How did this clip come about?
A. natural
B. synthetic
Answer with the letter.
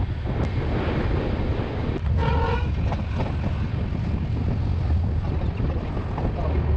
A